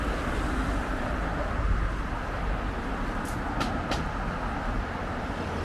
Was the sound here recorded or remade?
recorded